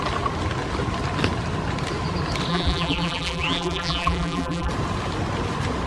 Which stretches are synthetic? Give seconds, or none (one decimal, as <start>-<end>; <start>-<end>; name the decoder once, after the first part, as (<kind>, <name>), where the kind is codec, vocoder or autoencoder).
2.5-4.7 (vocoder, BigVGAN v2)